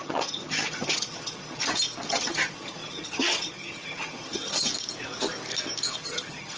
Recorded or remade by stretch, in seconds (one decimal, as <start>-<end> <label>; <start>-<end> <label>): 0.0-1.6 remade; 1.6-2.1 recorded; 2.1-4.7 remade; 4.7-6.0 recorded; 6.0-6.6 remade